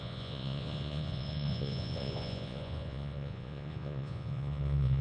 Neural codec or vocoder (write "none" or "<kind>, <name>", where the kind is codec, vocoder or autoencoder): vocoder, Vocos